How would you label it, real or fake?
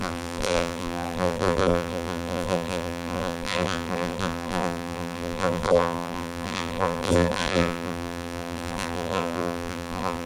fake